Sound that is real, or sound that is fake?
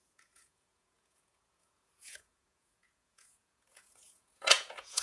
fake